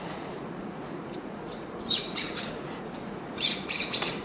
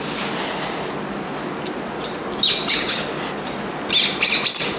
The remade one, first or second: first